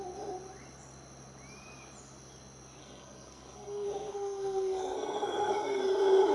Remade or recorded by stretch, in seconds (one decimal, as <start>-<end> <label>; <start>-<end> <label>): 0.0-2.8 recorded; 2.8-5.8 remade; 5.8-6.3 recorded